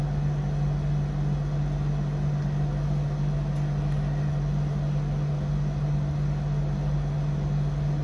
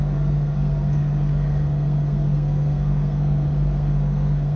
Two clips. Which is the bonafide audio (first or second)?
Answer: first